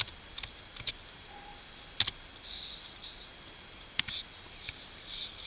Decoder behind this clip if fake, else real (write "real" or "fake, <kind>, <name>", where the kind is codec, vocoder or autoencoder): real